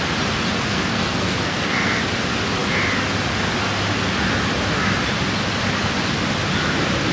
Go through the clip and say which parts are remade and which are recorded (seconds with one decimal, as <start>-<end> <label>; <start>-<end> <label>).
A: 0.0-0.7 recorded; 0.7-2.0 remade; 2.0-7.1 recorded